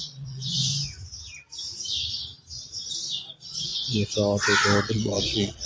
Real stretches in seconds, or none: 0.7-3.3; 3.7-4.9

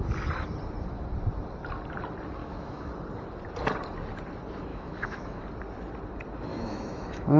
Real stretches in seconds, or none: 0.0-2.4; 2.9-4.7; 5.4-6.5

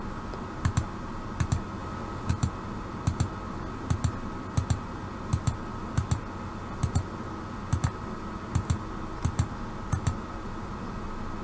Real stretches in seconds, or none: 0.0-11.4

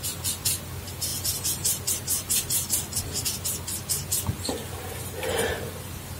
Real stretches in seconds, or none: 0.0-6.2

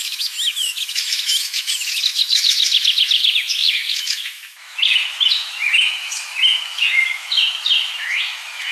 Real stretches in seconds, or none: none

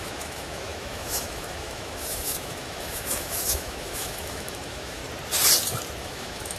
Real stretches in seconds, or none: 5.0-6.0

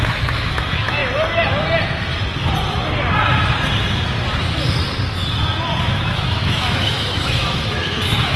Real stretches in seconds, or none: 1.0-5.8